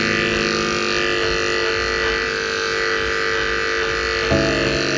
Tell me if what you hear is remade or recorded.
recorded